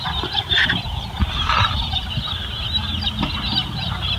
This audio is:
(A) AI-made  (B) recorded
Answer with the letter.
B